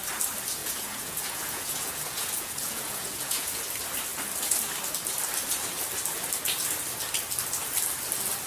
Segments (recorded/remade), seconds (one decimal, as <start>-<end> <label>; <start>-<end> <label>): 0.0-0.6 recorded; 0.6-3.6 remade; 3.6-8.5 recorded